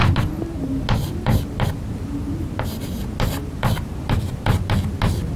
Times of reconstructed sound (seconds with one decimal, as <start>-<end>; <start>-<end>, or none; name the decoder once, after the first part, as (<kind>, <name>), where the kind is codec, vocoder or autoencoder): none

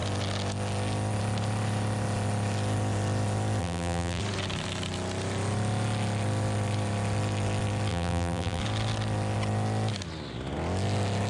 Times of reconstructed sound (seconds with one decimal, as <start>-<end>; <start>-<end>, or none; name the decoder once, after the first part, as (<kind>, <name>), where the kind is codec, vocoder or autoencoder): 3.6-4.2 (vocoder, BigVGAN v2); 7.9-8.6